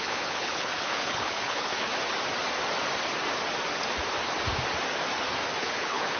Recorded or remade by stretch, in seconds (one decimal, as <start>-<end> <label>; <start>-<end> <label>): 0.0-1.9 remade; 1.9-5.6 recorded; 5.6-6.2 remade

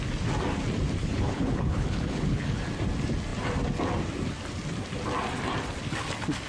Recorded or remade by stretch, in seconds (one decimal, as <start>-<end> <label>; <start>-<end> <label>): 0.0-1.0 recorded; 1.0-2.6 remade; 2.6-6.5 recorded

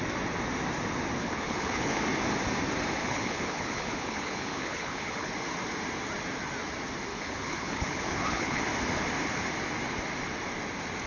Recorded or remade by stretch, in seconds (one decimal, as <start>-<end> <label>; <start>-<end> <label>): 0.0-1.2 recorded; 1.2-2.0 remade; 2.0-3.0 recorded; 3.0-5.3 remade; 5.3-7.1 recorded; 7.1-8.6 remade; 8.6-11.1 recorded